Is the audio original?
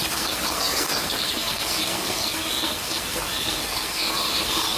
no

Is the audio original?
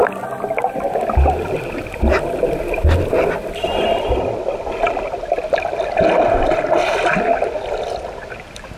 yes